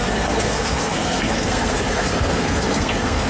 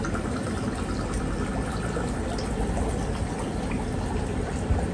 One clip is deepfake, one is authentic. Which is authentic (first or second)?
second